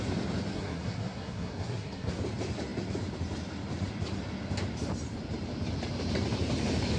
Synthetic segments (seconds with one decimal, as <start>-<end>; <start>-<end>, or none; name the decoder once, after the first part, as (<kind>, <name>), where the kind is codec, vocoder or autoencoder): 0.5-2.2 (codec, SNAC)